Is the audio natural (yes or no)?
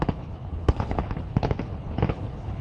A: no